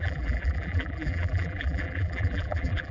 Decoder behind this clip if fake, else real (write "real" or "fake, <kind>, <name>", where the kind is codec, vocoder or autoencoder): fake, vocoder, BigVGAN v2